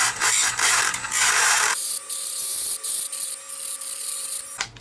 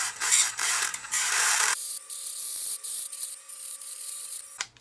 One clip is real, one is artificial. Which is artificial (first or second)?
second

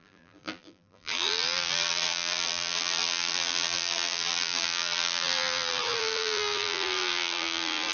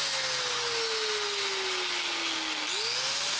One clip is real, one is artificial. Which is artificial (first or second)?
first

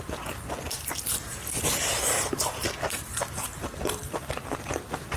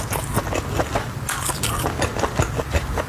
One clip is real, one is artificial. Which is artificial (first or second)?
first